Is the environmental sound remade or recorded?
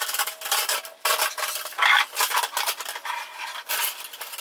recorded